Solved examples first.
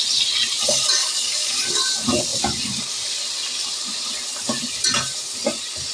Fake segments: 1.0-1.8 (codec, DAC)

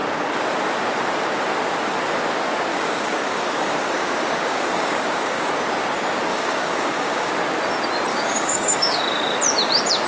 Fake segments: 2.7-5.5 (codec, DAC); 6.3-7.3; 8.1-9.0